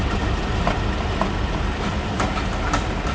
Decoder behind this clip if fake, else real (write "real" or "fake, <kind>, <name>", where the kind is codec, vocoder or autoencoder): real